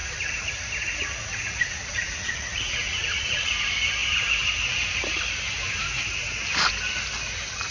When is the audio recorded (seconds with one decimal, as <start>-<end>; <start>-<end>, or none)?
0.5-1.0; 3.5-7.7